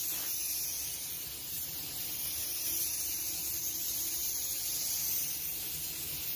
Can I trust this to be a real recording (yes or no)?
yes